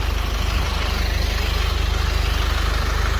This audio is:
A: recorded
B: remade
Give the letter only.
A